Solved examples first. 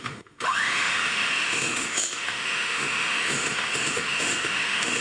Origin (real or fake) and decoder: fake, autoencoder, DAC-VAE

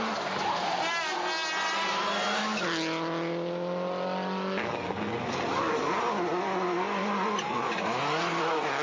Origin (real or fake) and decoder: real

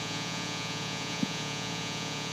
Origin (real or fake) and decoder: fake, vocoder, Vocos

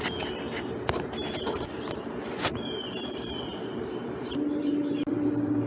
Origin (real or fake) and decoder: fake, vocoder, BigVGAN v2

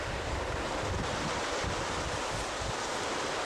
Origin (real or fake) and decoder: real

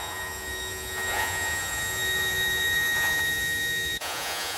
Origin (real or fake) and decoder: fake, vocoder, Vocos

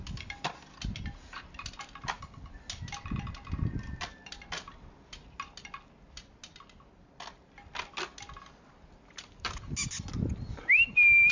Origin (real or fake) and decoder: real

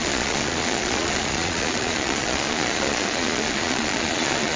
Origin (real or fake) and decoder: fake, vocoder, Vocos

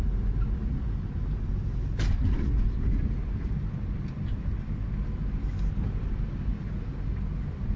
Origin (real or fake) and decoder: real